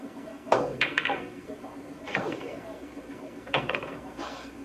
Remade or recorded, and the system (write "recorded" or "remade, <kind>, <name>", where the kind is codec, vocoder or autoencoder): remade, codec, SNAC